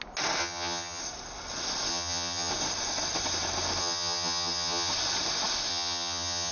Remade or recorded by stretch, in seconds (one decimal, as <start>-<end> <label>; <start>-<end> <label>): 0.0-0.4 recorded; 0.4-1.0 remade; 1.0-1.9 recorded; 1.9-2.5 remade; 2.5-3.8 recorded; 3.8-4.9 remade; 4.9-5.7 recorded; 5.7-6.5 remade